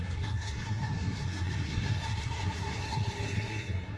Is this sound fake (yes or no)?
yes